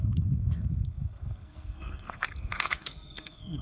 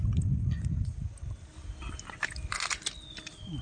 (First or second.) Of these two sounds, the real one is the second